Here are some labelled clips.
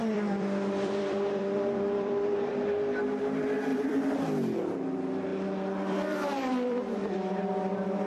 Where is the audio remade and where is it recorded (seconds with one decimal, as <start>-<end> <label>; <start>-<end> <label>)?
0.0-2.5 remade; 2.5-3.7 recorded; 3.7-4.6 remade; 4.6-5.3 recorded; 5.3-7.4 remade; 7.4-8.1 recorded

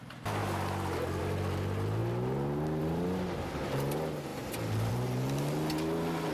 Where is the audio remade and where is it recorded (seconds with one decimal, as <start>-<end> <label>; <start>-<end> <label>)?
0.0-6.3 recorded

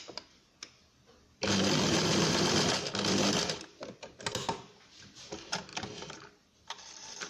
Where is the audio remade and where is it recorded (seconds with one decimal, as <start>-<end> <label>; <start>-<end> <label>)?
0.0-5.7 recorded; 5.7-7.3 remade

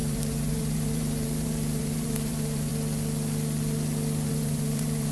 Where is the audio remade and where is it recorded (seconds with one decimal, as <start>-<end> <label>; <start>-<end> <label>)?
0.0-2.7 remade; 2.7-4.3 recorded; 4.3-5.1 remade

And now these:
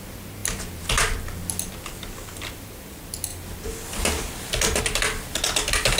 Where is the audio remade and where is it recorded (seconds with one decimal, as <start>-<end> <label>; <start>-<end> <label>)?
0.0-6.0 recorded

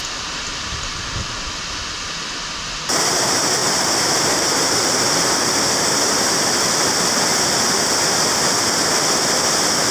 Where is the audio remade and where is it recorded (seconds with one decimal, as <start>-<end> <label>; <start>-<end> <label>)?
0.0-3.6 recorded; 3.6-5.4 remade; 5.4-9.9 recorded

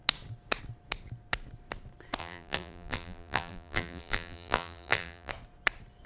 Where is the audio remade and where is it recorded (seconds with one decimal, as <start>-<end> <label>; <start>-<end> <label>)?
0.0-2.2 recorded; 2.2-5.3 remade; 5.3-6.1 recorded

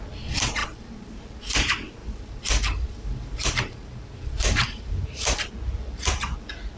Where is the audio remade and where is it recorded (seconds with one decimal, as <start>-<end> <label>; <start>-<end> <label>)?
0.0-0.6 recorded; 0.6-1.2 remade; 1.2-2.0 recorded; 2.0-5.5 remade; 5.5-6.8 recorded